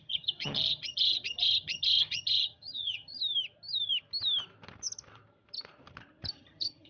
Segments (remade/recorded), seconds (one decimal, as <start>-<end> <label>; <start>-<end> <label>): 0.0-3.2 remade; 3.2-6.3 recorded; 6.3-6.9 remade